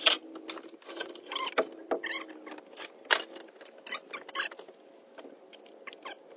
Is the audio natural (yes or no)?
yes